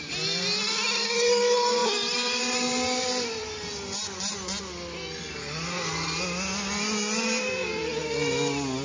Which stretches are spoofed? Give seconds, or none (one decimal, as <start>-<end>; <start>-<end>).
none